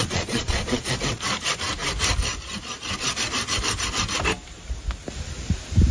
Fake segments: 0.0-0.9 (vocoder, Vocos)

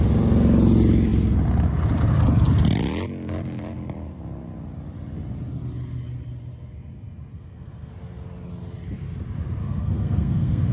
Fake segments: 7.3-7.9 (codec, SNAC); 9.6-10.7